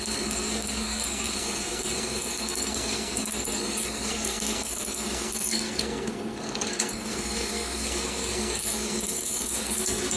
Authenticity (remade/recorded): remade